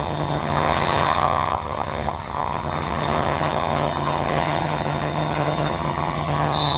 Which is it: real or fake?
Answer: fake